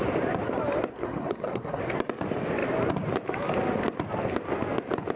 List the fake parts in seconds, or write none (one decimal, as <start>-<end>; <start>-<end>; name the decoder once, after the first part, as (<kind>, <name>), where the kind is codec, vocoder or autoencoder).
0.9-1.8 (codec, SNAC)